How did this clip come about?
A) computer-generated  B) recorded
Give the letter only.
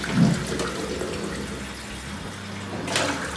B